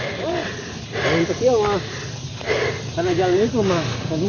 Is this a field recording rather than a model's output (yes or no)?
yes